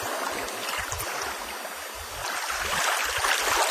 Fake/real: real